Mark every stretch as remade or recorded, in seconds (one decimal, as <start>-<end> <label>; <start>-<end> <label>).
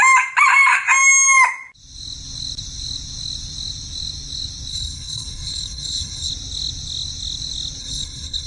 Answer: 0.0-4.7 recorded; 4.7-6.3 remade; 6.3-7.8 recorded; 7.8-8.5 remade